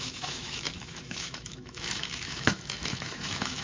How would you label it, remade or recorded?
remade